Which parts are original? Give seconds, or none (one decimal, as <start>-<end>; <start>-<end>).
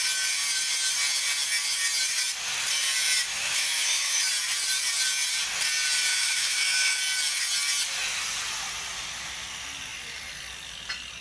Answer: 0.0-3.3; 4.3-6.1; 7.0-11.2